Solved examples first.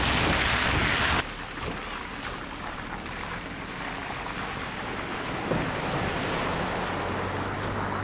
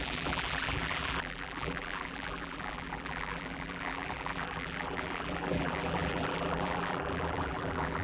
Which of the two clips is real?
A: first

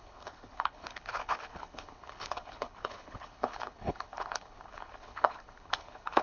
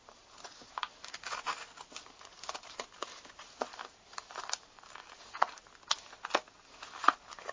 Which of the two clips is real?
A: second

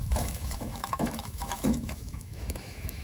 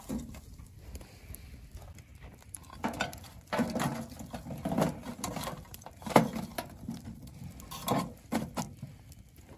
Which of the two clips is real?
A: second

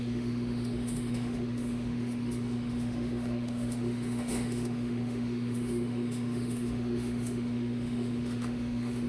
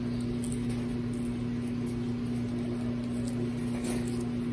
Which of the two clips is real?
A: second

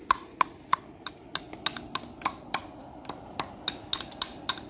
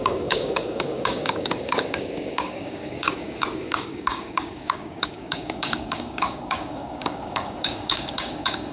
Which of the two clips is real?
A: first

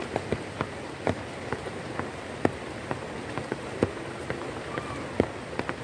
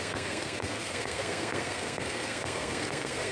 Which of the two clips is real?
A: first